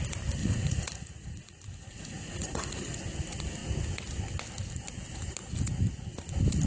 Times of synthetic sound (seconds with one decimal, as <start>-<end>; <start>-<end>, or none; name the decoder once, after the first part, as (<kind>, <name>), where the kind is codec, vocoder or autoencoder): 0.4-3.0 (vocoder, Vocos)